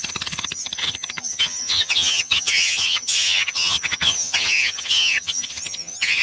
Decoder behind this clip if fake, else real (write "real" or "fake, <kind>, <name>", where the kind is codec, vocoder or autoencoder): fake, vocoder, HiFi-GAN